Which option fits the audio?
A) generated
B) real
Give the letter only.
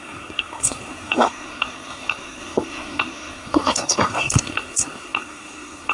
A